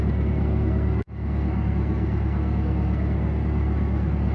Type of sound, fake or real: fake